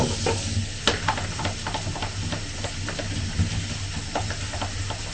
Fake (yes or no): no